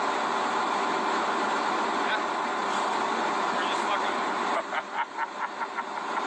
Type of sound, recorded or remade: recorded